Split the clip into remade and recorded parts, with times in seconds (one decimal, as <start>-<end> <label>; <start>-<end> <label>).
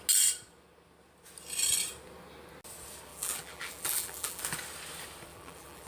0.0-3.1 recorded; 3.1-4.4 remade; 4.4-5.3 recorded; 5.3-5.9 remade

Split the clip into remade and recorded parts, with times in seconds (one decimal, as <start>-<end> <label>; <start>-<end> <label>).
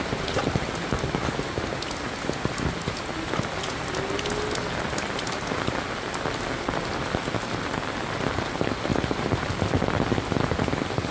0.0-8.9 recorded; 8.9-9.5 remade; 9.5-11.1 recorded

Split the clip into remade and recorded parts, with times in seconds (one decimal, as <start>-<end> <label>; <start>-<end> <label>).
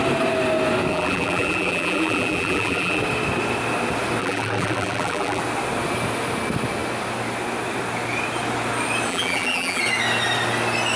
0.0-0.9 recorded; 0.9-3.0 remade; 3.0-4.2 recorded; 4.2-5.4 remade; 5.4-9.1 recorded; 9.1-9.8 remade; 9.8-11.0 recorded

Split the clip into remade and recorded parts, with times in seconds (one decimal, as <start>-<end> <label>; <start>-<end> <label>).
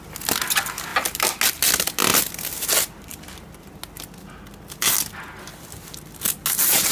0.0-6.9 recorded